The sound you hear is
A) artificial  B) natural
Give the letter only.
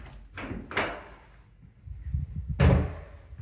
B